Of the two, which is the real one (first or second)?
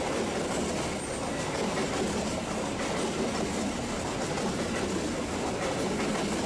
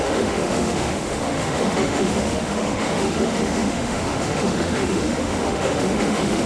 first